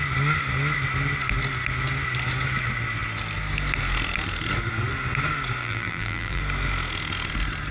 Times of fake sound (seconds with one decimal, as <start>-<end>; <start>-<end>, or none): 5.6-6.4